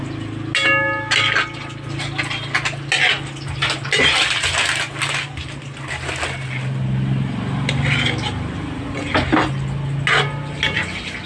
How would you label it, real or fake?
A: real